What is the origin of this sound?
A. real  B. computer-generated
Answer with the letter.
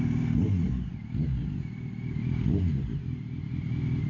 A